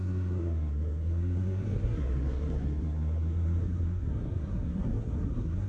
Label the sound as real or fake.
fake